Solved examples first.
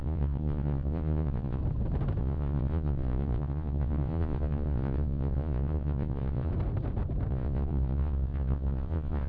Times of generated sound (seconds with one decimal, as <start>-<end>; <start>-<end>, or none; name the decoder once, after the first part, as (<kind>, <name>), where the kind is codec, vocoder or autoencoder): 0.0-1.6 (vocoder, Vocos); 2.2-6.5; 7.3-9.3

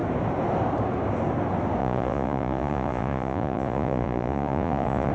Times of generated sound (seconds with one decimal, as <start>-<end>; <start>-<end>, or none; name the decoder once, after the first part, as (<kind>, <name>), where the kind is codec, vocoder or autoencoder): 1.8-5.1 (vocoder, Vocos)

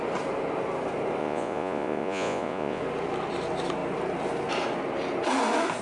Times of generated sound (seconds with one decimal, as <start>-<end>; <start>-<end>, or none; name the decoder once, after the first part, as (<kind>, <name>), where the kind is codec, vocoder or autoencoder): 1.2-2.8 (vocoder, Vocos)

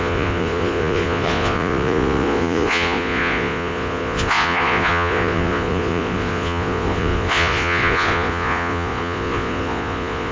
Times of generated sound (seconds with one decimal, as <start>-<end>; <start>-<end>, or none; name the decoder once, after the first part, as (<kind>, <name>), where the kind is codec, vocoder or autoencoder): 0.0-10.3 (vocoder, Vocos)

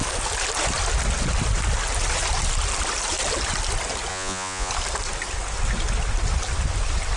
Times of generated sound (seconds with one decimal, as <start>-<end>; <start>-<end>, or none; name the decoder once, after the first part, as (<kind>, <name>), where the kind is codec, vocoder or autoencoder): 4.1-4.7 (vocoder, Vocos)

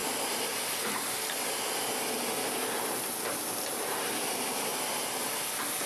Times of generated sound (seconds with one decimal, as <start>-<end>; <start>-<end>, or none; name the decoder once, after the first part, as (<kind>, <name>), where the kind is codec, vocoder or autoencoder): none